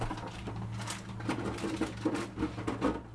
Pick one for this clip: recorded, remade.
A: recorded